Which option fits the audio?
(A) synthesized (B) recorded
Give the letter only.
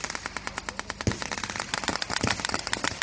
B